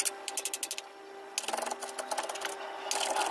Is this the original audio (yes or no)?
yes